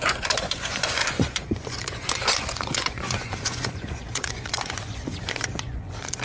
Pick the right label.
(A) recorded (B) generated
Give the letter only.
B